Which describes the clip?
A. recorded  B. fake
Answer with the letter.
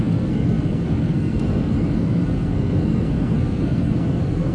B